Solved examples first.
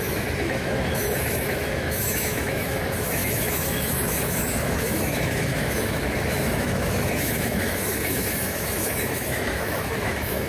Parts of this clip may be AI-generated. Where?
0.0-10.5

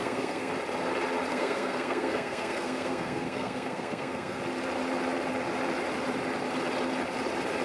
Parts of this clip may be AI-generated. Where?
0.0-0.5; 1.3-4.4

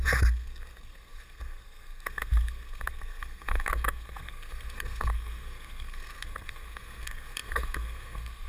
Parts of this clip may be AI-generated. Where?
0.0-8.5

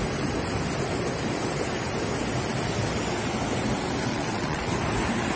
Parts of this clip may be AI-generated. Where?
4.0-4.7

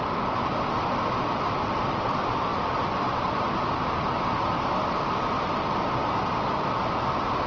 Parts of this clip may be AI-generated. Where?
none